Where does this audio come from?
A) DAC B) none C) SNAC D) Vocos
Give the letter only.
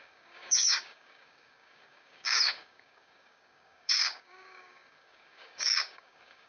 A